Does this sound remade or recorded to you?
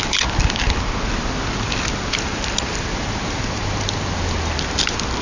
recorded